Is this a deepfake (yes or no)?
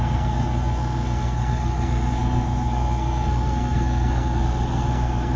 yes